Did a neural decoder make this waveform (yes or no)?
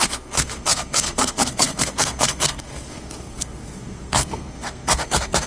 yes